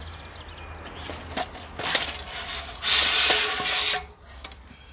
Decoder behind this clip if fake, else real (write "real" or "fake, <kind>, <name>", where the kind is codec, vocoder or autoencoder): real